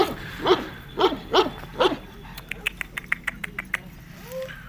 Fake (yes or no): no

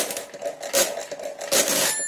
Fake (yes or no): no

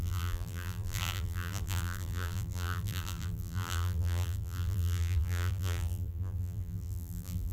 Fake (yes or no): yes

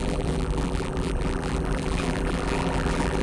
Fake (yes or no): yes